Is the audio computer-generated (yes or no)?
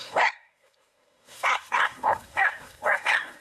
yes